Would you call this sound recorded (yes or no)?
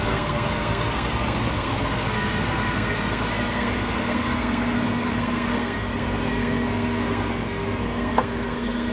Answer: no